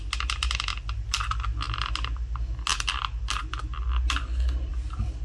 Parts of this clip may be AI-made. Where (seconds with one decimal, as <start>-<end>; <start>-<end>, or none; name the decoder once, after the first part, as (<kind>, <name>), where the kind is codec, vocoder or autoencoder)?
none

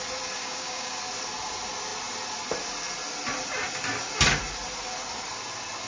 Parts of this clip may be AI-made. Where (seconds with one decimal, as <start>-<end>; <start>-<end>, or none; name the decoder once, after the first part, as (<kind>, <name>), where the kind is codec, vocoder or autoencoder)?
0.4-1.0 (codec, DAC)

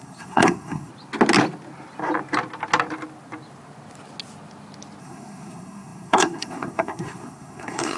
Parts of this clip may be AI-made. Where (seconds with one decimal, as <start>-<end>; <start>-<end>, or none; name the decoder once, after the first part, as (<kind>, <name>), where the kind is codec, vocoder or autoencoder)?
0.0-0.9 (codec, SNAC); 5.0-8.0